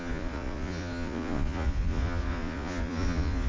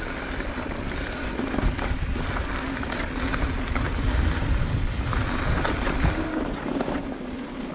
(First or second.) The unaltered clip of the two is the second